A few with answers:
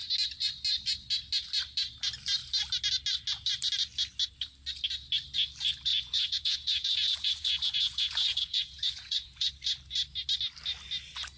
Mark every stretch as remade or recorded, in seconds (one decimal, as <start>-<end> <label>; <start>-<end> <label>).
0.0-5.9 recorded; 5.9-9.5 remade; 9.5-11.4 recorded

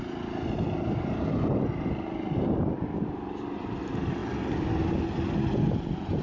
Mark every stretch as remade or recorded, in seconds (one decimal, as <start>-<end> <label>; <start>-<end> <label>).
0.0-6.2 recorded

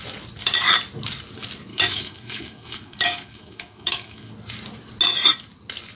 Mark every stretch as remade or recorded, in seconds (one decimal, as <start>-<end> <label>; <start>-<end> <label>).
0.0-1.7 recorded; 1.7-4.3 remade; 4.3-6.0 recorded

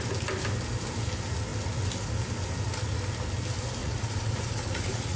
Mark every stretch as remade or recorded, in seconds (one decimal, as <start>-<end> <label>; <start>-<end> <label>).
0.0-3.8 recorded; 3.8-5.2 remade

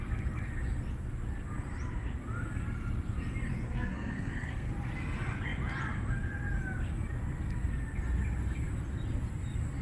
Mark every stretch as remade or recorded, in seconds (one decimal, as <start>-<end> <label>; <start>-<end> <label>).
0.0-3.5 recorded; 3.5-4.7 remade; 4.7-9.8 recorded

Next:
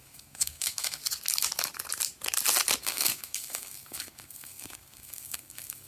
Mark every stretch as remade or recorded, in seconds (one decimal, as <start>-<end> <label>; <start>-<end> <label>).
0.0-1.0 remade; 1.0-2.8 recorded; 2.8-5.9 remade